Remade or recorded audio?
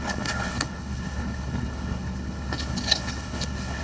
remade